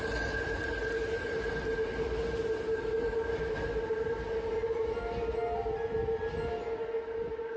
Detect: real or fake real